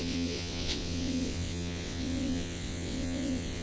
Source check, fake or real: fake